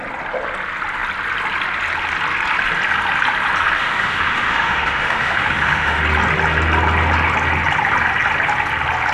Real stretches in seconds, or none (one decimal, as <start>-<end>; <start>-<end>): 0.0-3.8; 6.0-9.1